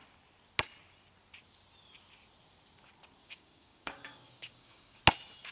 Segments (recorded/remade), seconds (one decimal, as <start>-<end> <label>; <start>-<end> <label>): 0.0-3.2 recorded; 3.2-5.0 remade; 5.0-5.5 recorded